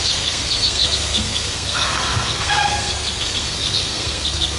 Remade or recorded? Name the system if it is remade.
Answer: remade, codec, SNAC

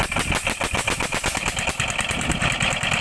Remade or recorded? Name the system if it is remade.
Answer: recorded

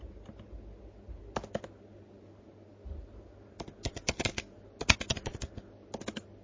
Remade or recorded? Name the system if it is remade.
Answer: recorded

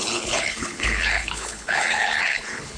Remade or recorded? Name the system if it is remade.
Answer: remade, codec, HILCodec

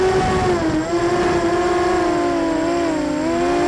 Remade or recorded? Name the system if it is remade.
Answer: recorded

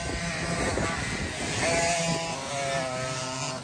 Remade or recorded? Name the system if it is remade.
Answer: recorded